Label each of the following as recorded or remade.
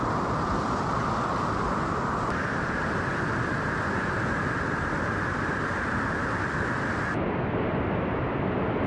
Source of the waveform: recorded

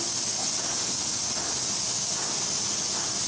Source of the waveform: recorded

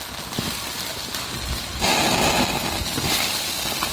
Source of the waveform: recorded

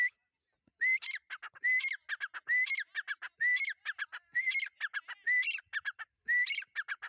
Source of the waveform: recorded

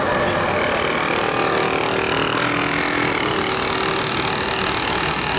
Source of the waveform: recorded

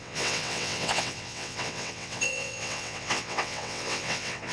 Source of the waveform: remade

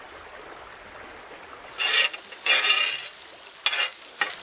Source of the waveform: recorded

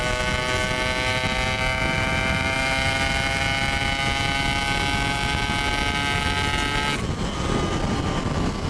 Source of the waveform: recorded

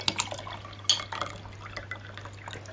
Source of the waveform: recorded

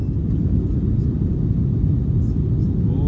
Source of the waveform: recorded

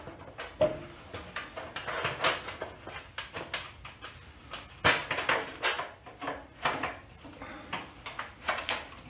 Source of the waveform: recorded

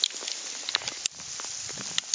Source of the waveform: recorded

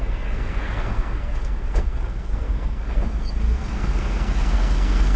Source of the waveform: remade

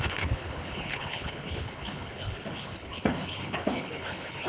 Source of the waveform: remade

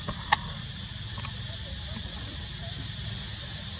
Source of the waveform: recorded